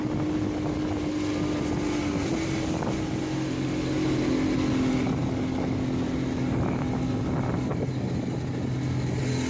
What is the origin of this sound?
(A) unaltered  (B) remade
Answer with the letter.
A